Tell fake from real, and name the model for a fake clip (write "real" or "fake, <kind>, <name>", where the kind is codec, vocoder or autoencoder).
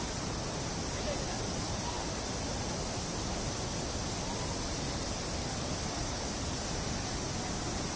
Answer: real